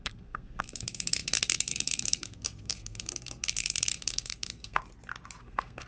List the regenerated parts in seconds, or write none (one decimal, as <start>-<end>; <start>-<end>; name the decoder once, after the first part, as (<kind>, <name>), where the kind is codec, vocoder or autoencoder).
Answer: 0.0-4.8 (codec, SNAC); 5.4-5.9